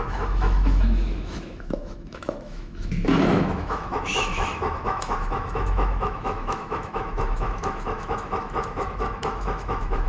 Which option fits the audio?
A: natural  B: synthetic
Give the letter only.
B